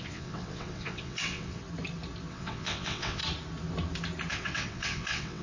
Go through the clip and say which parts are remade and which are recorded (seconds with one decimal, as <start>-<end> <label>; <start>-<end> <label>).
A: 0.0-1.6 remade; 1.6-2.3 recorded; 2.3-3.2 remade; 3.2-4.3 recorded; 4.3-5.4 remade